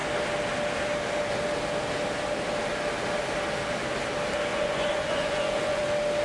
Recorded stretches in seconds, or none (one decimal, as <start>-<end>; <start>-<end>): 0.0-4.5; 5.8-6.2